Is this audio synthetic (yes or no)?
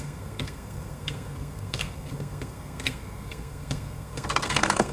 yes